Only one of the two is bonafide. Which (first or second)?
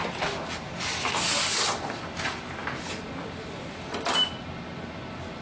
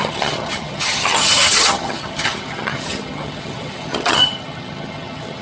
first